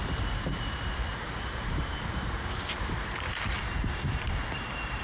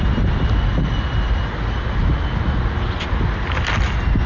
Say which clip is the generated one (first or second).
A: first